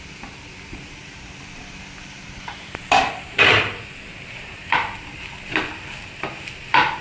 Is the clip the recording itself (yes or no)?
no